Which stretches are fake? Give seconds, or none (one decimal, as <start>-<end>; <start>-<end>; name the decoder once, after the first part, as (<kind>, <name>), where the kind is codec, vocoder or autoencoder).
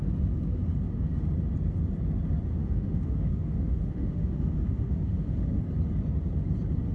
2.5-5.6 (autoencoder, DAC-VAE)